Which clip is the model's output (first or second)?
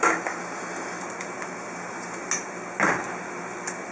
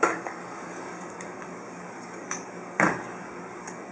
second